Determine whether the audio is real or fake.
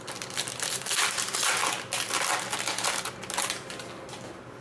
real